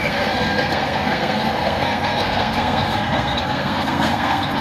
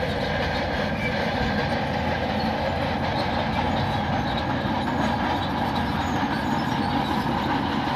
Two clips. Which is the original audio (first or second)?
second